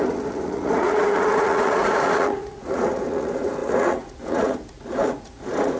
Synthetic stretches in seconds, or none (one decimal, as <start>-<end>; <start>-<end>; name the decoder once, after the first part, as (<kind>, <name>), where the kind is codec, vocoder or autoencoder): 0.0-5.8 (vocoder, Vocos)